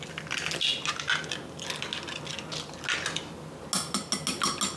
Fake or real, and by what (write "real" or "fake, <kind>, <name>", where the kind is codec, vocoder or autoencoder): real